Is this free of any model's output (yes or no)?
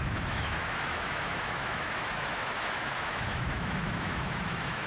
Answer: no